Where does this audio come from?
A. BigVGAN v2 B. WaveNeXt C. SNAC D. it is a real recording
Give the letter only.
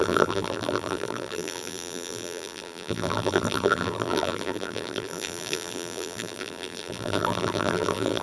A